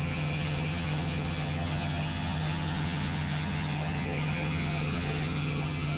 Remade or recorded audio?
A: remade